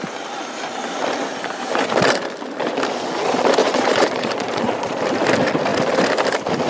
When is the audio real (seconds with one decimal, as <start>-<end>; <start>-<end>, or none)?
0.0-3.6; 5.0-6.7